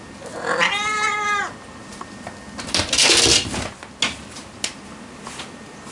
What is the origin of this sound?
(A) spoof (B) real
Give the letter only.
B